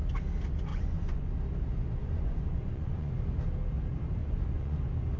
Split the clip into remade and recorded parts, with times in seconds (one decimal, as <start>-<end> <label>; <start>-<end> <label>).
0.0-0.7 recorded; 0.7-1.3 remade; 1.3-2.0 recorded; 2.0-3.1 remade; 3.1-4.2 recorded; 4.2-4.8 remade; 4.8-5.2 recorded